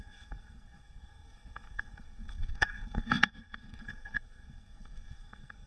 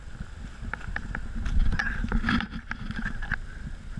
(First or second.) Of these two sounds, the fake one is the first